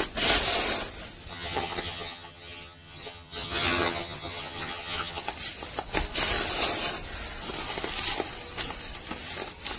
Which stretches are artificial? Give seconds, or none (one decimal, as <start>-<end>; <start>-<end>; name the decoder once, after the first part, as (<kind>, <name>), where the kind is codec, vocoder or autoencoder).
1.3-5.2 (vocoder, HiFi-GAN)